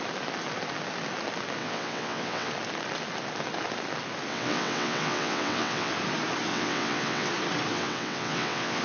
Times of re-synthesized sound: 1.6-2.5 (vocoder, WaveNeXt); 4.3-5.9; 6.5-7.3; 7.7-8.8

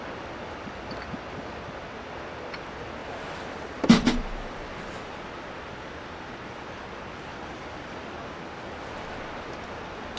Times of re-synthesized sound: 3.0-6.8 (vocoder, BigVGAN v2); 7.3-8.3